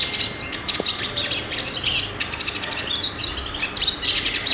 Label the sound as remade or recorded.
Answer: recorded